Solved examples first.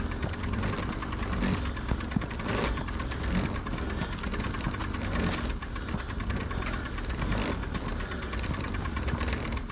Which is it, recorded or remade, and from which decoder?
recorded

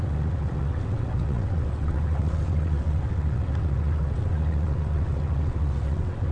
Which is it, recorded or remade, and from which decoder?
remade, vocoder, WaveNeXt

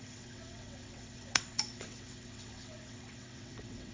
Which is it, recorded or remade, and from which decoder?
remade, vocoder, WaveNeXt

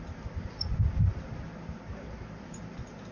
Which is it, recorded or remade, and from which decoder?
recorded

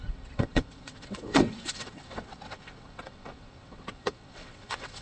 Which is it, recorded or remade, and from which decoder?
remade, vocoder, WaveNeXt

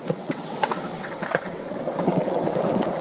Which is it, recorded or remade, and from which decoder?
remade, vocoder, WaveNeXt